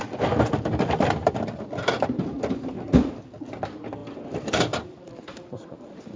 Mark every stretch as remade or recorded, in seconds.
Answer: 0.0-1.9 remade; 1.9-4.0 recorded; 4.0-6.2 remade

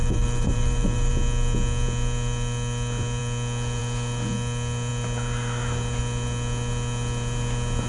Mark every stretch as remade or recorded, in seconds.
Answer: 0.0-1.1 remade; 1.1-7.9 recorded

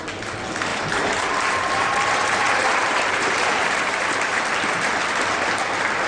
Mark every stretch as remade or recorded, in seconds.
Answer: 0.0-0.7 recorded; 0.7-4.4 remade; 4.4-6.1 recorded